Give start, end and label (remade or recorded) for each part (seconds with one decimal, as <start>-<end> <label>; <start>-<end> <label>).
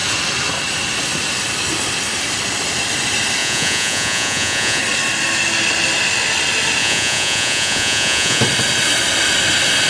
0.0-3.4 recorded; 3.4-4.8 remade; 4.8-6.8 recorded; 6.8-8.4 remade; 8.4-9.9 recorded